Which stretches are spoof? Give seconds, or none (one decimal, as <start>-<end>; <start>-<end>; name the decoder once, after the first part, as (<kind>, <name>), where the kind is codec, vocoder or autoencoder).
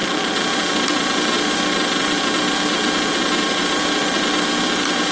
none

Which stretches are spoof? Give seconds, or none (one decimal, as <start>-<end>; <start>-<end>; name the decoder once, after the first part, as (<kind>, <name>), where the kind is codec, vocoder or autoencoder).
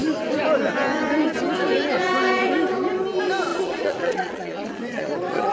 3.5-5.5 (vocoder, Vocos)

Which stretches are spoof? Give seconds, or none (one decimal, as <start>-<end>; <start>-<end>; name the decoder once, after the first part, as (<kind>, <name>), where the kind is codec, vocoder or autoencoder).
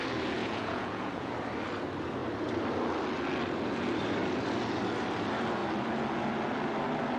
0.4-1.3 (vocoder, Vocos)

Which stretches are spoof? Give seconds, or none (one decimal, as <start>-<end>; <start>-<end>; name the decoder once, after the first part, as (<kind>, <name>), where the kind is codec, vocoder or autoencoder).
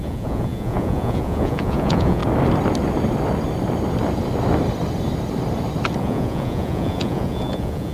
0.0-2.2 (vocoder, Vocos); 6.0-7.9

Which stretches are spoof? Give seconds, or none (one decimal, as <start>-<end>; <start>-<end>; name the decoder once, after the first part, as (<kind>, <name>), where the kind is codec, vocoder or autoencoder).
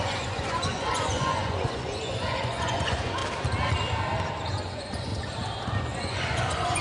0.0-3.2 (vocoder, Vocos); 4.5-5.1; 5.8-6.8